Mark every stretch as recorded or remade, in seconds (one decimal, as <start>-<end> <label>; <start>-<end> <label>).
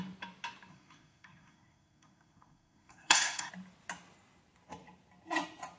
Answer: 0.0-0.7 recorded; 0.7-3.5 remade; 3.5-5.8 recorded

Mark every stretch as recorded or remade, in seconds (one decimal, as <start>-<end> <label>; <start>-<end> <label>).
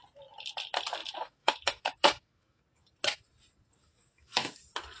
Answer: 0.0-1.0 recorded; 1.0-2.6 remade; 2.6-3.8 recorded; 3.8-4.5 remade; 4.5-5.0 recorded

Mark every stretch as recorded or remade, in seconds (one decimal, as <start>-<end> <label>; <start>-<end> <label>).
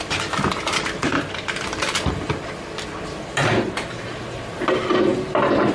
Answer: 0.0-5.7 recorded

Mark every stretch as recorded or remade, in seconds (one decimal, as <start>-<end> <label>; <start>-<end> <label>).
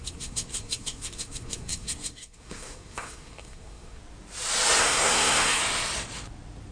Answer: 0.0-4.0 remade; 4.0-4.8 recorded; 4.8-5.6 remade; 5.6-6.7 recorded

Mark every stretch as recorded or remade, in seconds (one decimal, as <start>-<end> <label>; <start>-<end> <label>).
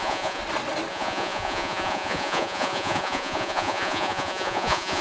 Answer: 0.0-0.4 remade; 0.4-0.9 recorded; 0.9-5.0 remade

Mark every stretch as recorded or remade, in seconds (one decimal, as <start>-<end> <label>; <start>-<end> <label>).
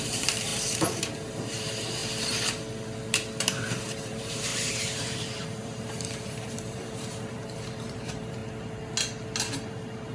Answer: 0.0-2.0 remade; 2.0-3.8 recorded; 3.8-8.4 remade; 8.4-9.7 recorded; 9.7-10.1 remade